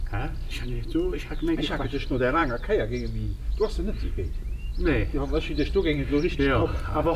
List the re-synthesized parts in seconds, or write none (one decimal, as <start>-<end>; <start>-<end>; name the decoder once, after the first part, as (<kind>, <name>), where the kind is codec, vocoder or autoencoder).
none